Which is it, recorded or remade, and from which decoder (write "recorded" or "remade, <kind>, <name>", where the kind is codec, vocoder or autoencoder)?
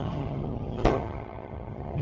remade, vocoder, HiFi-GAN